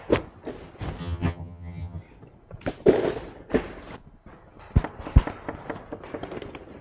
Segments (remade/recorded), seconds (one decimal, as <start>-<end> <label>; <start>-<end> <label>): 0.0-1.0 recorded; 1.0-2.0 remade; 2.0-6.8 recorded